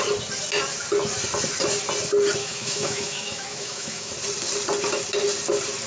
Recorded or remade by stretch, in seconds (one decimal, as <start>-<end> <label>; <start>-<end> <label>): 0.0-2.4 recorded; 2.4-4.1 remade; 4.1-5.9 recorded